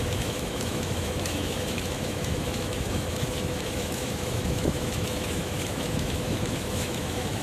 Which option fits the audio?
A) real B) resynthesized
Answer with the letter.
B